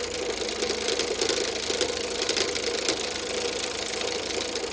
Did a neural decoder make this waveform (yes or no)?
no